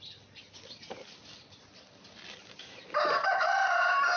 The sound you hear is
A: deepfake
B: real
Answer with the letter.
B